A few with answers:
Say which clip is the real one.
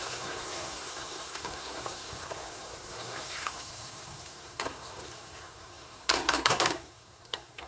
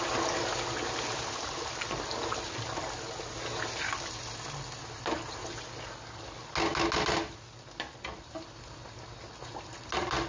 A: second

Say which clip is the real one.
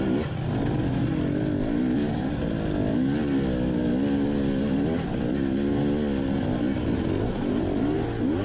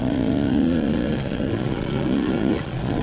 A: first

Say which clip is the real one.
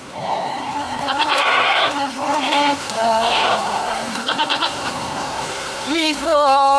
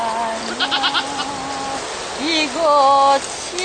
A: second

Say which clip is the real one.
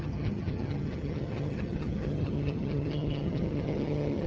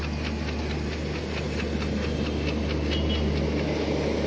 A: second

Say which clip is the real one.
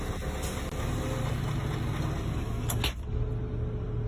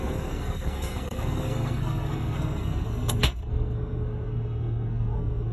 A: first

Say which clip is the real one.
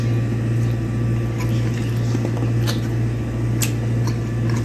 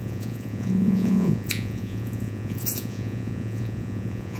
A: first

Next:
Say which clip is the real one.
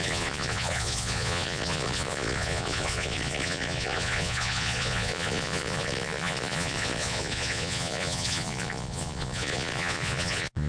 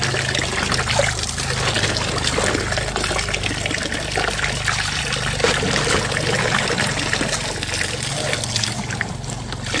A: second